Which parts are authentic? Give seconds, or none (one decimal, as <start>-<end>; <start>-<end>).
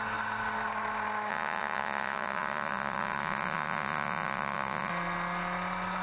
0.0-1.3; 4.9-6.0